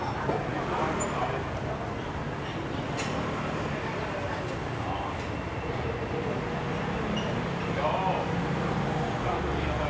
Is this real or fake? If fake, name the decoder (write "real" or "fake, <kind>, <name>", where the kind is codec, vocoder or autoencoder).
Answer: real